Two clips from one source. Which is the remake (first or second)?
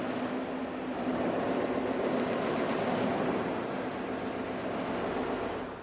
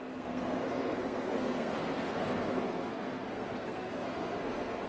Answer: second